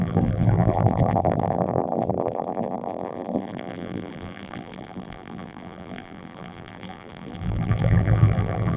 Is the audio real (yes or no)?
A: no